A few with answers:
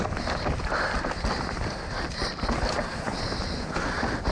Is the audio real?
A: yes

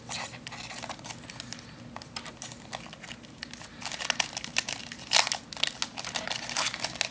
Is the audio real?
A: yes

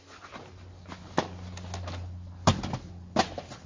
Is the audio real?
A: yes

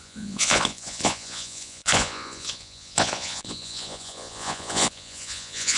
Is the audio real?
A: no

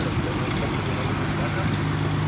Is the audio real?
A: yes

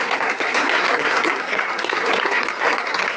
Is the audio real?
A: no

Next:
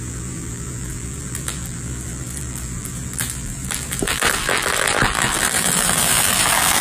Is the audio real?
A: no